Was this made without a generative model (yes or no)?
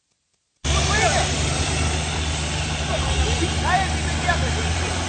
yes